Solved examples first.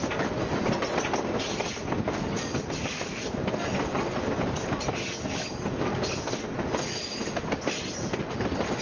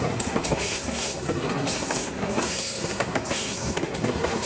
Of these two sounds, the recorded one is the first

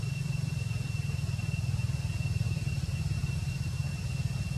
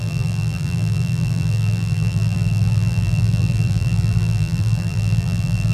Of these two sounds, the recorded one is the first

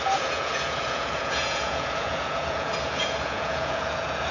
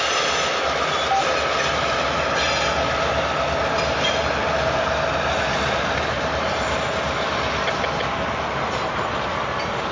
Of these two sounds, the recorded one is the second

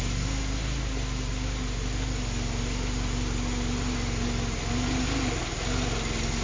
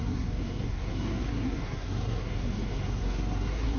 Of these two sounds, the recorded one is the first